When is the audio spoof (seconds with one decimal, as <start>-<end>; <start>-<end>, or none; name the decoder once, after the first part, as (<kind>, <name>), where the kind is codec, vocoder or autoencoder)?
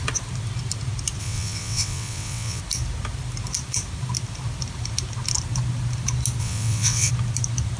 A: 1.2-2.6 (vocoder, WaveNeXt); 6.4-7.1